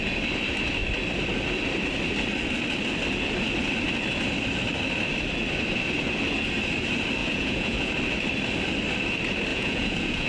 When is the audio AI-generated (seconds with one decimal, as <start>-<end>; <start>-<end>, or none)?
7.2-7.9; 9.5-10.3